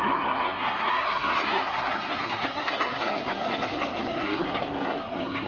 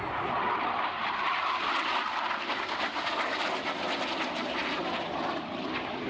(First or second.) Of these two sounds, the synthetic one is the first